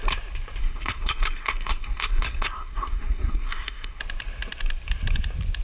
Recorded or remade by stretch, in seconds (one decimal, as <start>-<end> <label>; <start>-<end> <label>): 0.0-0.6 recorded; 0.6-4.0 remade; 4.0-5.6 recorded